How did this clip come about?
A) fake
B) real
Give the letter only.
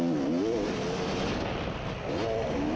B